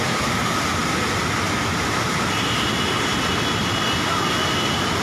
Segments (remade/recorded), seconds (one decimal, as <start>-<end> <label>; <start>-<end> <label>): 0.0-5.0 recorded